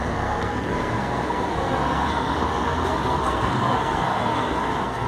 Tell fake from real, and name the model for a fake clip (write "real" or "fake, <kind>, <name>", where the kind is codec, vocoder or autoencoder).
fake, codec, SNAC